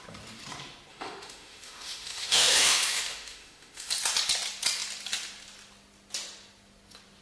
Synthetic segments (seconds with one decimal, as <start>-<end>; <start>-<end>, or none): 0.9-3.9